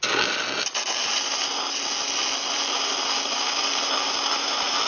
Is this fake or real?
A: real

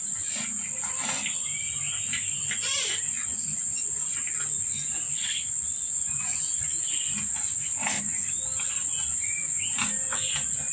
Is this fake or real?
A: real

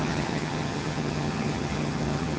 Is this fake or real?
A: fake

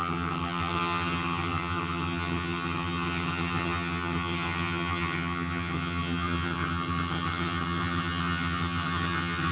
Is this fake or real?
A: fake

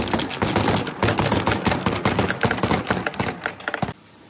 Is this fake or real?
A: real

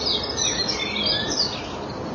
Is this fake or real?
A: real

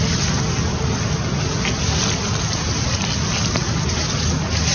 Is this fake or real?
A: real